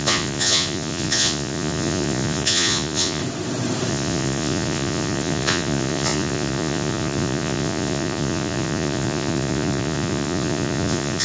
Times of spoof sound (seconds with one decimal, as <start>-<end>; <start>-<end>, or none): 0.0-3.2; 3.9-11.2

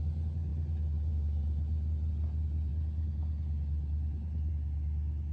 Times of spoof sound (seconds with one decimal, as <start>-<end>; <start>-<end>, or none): none

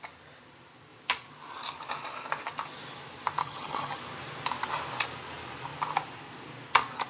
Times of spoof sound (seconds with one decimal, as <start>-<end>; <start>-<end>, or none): 3.4-4.0

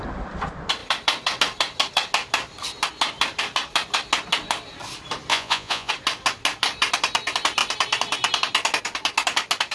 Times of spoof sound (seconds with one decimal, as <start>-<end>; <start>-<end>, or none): 5.3-5.9

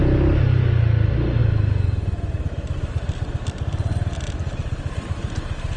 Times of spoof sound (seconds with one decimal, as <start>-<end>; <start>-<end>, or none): none

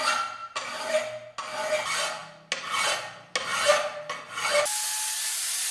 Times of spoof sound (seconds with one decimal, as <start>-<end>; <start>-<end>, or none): none